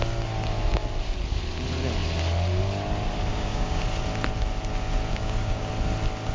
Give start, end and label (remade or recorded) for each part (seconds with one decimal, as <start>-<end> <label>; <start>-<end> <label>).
0.0-3.3 recorded; 3.3-3.8 remade; 3.8-5.1 recorded; 5.1-5.7 remade; 5.7-6.3 recorded